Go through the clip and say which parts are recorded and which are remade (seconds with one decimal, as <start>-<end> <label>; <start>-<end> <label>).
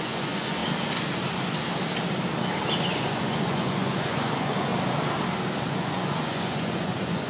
0.0-0.6 remade; 0.6-2.8 recorded; 2.8-4.7 remade; 4.7-5.7 recorded; 5.7-7.3 remade